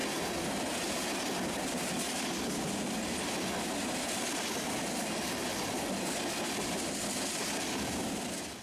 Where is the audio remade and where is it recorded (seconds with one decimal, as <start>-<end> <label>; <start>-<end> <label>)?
0.0-8.6 recorded